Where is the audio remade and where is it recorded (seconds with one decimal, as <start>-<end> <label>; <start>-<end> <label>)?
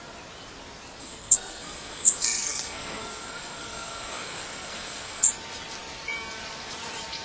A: 0.0-1.0 recorded; 1.0-5.3 remade; 5.3-7.2 recorded